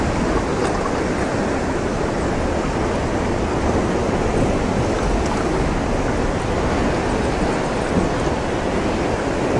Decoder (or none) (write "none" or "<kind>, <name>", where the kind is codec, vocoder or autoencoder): none